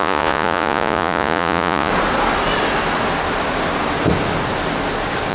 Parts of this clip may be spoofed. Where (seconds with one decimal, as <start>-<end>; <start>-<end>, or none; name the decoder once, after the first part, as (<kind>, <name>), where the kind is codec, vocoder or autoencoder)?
0.0-1.9 (vocoder, Vocos)

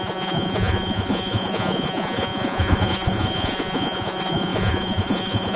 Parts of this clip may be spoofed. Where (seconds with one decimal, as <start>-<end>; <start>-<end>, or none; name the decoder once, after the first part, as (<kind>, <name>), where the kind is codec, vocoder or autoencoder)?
0.0-5.6 (vocoder, Vocos)

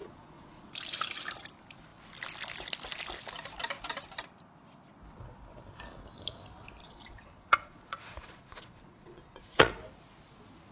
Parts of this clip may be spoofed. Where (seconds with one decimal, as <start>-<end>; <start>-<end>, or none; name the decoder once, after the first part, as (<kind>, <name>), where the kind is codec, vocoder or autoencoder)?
0.0-0.7 (vocoder, Vocos); 6.8-9.7

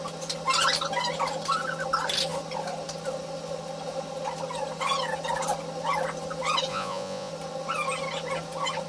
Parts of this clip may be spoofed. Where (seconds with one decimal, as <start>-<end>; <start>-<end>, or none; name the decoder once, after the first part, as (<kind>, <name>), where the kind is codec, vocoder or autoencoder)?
6.7-7.3 (vocoder, Vocos)

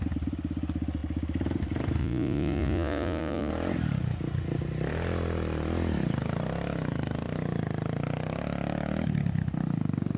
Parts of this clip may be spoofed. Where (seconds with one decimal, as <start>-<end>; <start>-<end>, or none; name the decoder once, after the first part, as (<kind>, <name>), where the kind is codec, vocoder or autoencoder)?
2.0-3.5 (vocoder, Vocos)